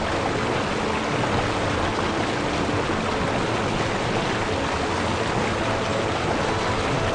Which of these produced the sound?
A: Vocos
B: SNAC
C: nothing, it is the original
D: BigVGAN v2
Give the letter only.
C